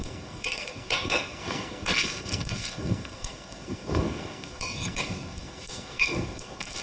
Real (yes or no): no